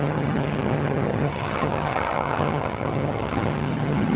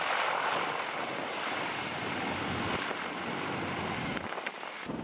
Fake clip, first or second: first